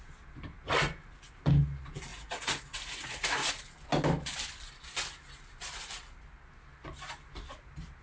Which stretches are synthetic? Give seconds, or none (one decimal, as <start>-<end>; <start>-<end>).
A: 2.1-3.5